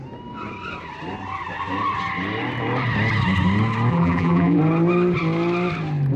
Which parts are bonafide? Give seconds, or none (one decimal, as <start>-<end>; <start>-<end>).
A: 0.0-3.9; 4.6-6.2